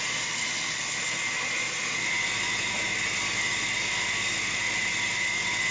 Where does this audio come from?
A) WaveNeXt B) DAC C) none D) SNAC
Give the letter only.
C